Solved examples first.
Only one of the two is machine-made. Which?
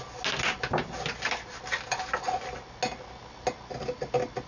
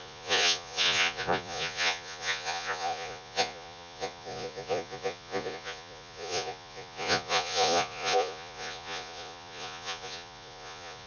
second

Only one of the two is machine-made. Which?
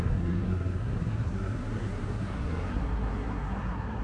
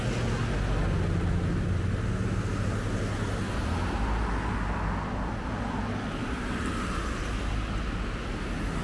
first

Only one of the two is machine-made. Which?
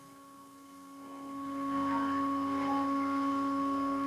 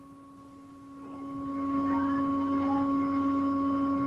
first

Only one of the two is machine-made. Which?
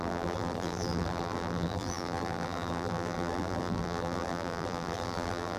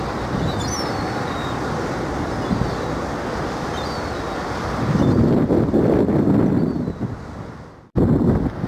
first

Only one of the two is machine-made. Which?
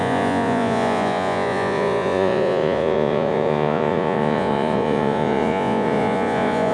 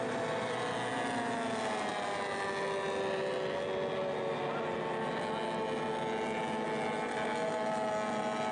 first